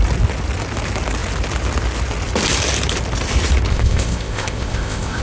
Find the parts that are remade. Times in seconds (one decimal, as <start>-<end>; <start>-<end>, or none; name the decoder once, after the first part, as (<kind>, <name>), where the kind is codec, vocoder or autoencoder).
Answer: 3.7-5.2 (codec, ZipCodec)